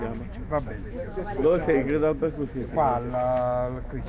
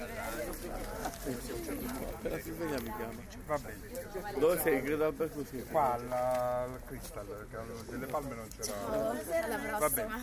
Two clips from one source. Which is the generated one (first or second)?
first